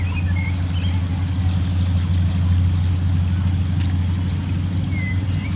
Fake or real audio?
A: real